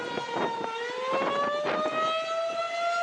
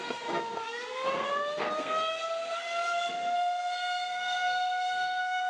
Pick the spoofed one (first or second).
second